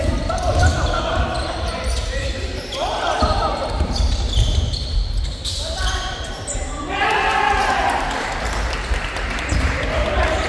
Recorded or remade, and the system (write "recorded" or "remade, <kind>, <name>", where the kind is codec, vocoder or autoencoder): remade, vocoder, BigVGAN v2